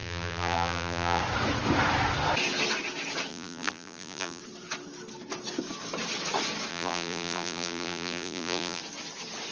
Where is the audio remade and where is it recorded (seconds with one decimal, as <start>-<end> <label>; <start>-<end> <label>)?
0.0-1.2 remade; 1.2-3.3 recorded; 3.3-4.4 remade; 4.4-6.7 recorded; 6.7-8.8 remade; 8.8-9.5 recorded